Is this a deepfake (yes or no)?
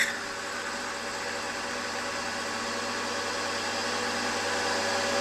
no